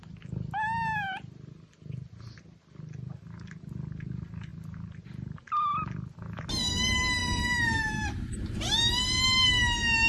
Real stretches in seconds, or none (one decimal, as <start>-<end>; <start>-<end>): 0.0-7.2; 8.6-10.1